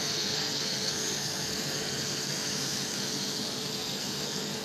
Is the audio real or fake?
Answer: fake